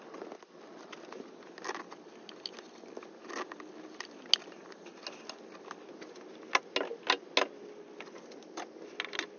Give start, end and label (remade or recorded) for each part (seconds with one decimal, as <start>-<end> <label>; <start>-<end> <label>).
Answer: 0.0-9.4 recorded

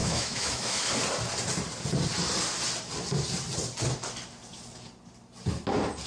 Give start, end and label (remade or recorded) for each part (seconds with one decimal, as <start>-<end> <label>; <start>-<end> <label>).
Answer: 0.0-0.9 remade; 0.9-6.1 recorded

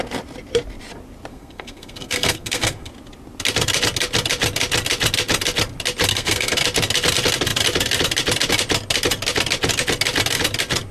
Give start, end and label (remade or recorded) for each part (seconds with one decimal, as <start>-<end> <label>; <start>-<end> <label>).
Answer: 0.0-1.3 recorded; 1.3-2.9 remade; 2.9-6.1 recorded; 6.1-6.6 remade; 6.6-10.9 recorded

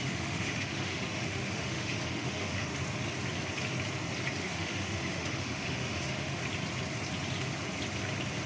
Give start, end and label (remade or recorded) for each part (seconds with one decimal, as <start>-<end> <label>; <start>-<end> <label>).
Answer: 0.0-2.7 remade; 2.7-4.4 recorded; 4.4-6.4 remade; 6.4-8.5 recorded

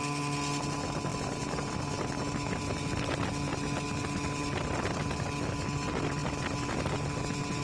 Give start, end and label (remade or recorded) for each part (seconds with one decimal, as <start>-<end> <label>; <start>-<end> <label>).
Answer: 0.0-1.1 recorded; 1.1-2.0 remade; 2.0-7.6 recorded

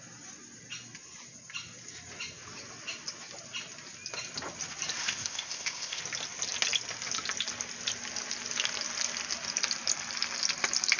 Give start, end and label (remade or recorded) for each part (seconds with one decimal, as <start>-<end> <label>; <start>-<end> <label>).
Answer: 0.0-5.0 recorded; 5.0-6.0 remade; 6.0-11.0 recorded

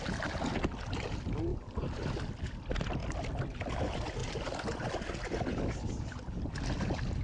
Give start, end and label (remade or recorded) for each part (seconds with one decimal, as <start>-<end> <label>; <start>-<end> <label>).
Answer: 0.0-1.5 recorded; 1.5-2.1 remade; 2.1-4.2 recorded; 4.2-4.9 remade; 4.9-7.2 recorded